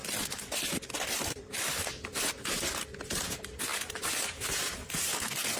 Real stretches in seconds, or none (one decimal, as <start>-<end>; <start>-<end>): 0.0-5.6